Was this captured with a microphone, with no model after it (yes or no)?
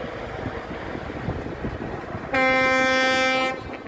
yes